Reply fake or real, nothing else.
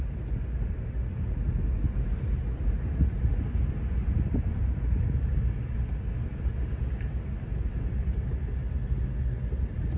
real